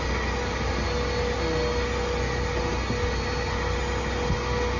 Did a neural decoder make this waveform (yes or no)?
no